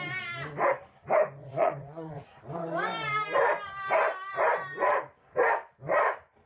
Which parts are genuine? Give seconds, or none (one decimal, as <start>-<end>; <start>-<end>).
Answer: 0.0-1.4; 2.4-6.5